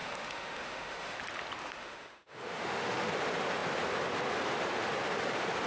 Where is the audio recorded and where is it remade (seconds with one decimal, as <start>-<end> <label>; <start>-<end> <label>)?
0.0-1.2 remade; 1.2-1.6 recorded; 1.6-3.1 remade; 3.1-5.7 recorded